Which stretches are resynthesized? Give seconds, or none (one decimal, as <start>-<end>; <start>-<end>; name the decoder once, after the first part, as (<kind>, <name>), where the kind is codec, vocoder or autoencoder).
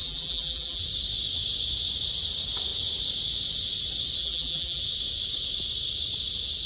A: 0.0-0.8 (vocoder, BigVGAN v2); 4.2-4.8